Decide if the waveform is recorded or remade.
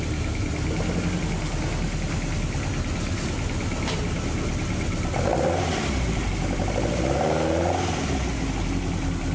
recorded